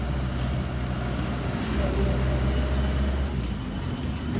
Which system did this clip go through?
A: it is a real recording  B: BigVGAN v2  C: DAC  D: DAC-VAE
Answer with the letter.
A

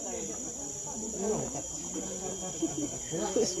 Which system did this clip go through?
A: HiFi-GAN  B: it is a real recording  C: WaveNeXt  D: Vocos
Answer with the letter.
B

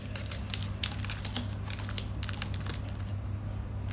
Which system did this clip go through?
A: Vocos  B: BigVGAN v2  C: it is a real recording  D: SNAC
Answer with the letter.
C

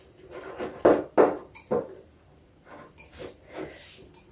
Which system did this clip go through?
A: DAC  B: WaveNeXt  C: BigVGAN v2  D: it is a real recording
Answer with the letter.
C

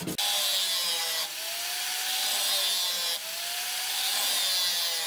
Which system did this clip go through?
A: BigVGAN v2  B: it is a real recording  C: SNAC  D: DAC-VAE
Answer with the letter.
B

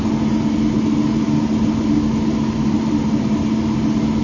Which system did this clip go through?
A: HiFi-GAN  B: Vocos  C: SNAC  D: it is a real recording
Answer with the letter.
D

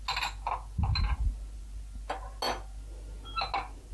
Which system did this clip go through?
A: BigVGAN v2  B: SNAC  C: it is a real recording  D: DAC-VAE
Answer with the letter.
C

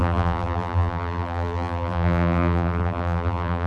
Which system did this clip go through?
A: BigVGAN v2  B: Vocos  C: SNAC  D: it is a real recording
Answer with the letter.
A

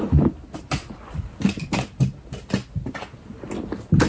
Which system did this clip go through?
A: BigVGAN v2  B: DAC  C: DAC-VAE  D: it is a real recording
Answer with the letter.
D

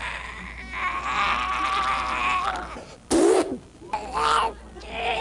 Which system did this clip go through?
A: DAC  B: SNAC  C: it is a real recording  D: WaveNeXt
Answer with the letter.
C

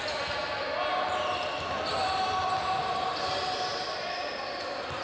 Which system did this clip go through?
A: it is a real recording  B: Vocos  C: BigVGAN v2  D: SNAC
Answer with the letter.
A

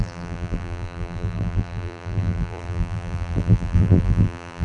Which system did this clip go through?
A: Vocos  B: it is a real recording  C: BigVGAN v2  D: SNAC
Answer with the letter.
C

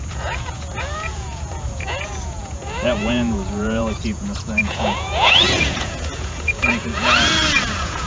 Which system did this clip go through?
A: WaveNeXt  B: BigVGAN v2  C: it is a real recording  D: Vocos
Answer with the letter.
D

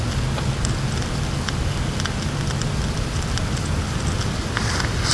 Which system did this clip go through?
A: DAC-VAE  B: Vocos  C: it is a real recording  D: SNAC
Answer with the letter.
C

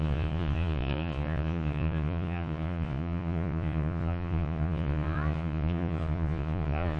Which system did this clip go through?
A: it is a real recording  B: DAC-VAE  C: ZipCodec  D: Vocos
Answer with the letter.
D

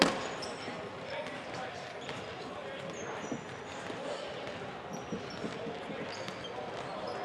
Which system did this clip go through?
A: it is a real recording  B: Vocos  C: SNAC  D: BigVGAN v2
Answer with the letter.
A